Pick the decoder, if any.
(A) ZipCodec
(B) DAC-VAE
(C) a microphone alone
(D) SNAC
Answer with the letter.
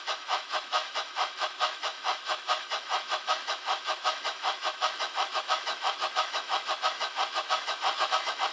B